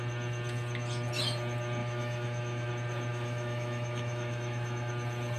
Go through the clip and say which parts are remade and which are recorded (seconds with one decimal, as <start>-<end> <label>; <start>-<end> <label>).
0.0-1.8 recorded; 1.8-2.7 remade; 2.7-3.1 recorded; 3.1-4.9 remade; 4.9-5.4 recorded